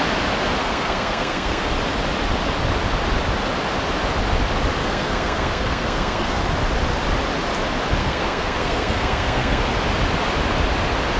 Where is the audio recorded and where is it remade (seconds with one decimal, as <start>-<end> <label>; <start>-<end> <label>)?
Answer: 0.0-0.6 recorded; 0.6-1.7 remade; 1.7-4.8 recorded; 4.8-6.4 remade; 6.4-8.0 recorded; 8.0-9.6 remade; 9.6-11.2 recorded